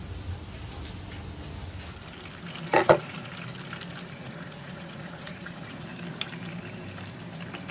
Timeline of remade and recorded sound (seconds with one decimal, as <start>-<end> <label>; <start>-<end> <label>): 0.0-2.7 recorded; 2.7-3.3 remade; 3.3-4.2 recorded; 4.2-5.9 remade; 5.9-7.7 recorded